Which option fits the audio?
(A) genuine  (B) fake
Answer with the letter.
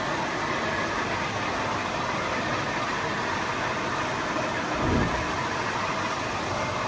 A